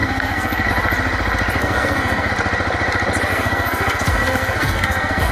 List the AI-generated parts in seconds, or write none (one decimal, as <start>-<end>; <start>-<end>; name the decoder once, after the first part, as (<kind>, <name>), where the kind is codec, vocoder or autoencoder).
0.0-0.7 (codec, SNAC); 1.6-2.3; 3.3-5.3